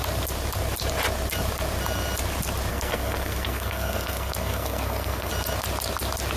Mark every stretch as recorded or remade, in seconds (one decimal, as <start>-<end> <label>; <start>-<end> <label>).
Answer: 0.0-2.7 recorded; 2.7-5.3 remade; 5.3-6.4 recorded